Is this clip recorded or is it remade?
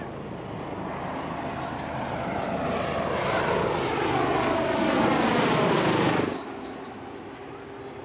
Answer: recorded